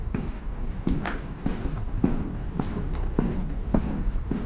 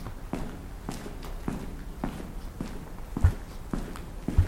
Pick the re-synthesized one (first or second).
first